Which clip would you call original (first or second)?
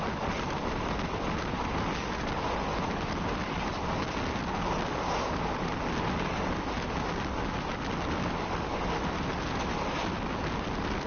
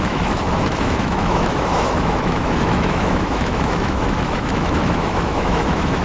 first